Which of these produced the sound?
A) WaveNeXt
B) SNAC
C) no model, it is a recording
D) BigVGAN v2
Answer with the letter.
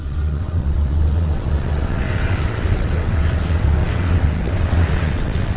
A